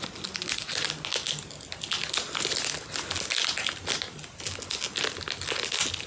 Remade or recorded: recorded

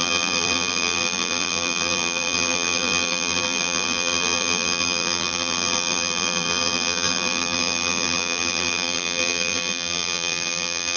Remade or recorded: remade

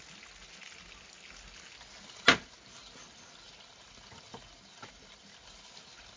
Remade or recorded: recorded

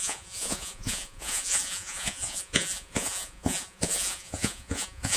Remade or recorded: remade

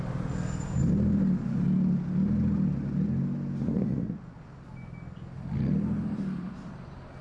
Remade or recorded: recorded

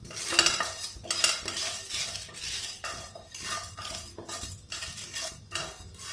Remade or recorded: recorded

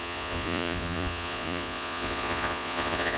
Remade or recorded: remade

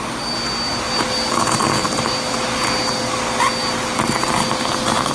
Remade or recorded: recorded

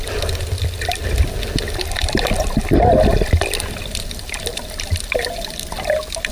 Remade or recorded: recorded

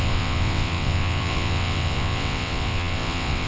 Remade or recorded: remade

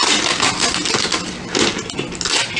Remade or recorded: recorded